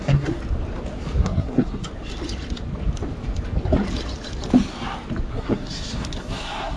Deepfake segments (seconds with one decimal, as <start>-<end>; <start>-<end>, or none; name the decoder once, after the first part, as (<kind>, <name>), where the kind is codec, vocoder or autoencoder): 0.0-0.4 (codec, SNAC); 1.2-1.9; 5.3-6.8